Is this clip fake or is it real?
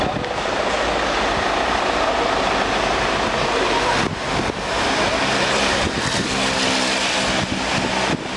real